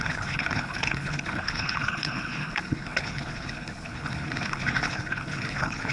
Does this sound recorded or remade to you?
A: remade